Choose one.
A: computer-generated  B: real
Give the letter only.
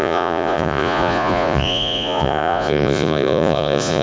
A